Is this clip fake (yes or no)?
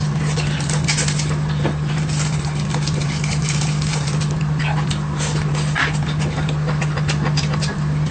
no